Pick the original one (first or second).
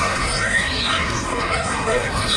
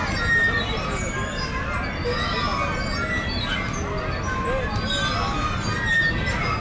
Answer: second